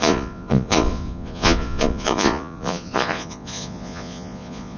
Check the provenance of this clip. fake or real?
fake